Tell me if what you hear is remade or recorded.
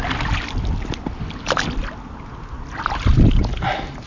recorded